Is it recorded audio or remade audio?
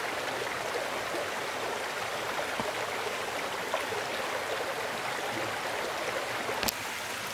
recorded